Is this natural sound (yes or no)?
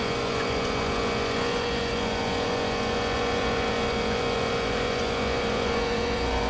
no